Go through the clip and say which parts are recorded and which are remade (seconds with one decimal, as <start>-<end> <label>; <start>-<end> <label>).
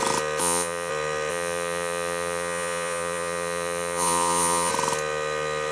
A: 0.0-0.4 recorded; 0.4-0.9 remade; 0.9-1.3 recorded; 1.3-4.7 remade; 4.7-5.7 recorded